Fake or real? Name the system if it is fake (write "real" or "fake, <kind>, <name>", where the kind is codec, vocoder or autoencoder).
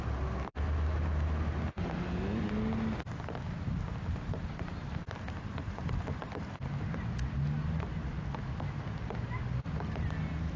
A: real